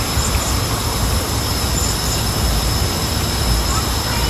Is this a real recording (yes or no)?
yes